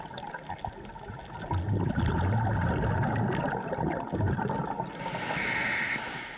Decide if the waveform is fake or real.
real